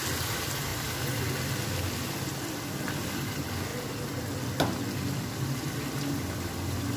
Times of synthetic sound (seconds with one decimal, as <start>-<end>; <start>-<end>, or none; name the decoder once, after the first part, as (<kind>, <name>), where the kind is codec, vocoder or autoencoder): none

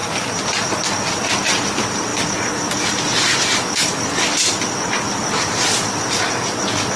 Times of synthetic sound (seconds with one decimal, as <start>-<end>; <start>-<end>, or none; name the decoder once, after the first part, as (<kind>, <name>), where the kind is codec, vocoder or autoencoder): none

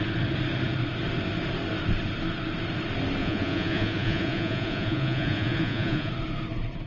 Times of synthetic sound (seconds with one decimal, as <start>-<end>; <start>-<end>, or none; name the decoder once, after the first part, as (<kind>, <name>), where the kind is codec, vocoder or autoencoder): 3.2-6.1 (vocoder, Vocos)

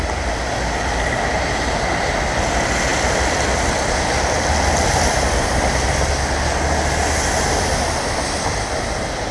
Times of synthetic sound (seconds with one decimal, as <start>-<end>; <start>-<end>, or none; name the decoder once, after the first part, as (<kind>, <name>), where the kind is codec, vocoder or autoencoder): 2.9-6.1 (vocoder, BigVGAN v2)